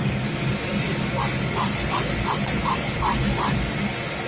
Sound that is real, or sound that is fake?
real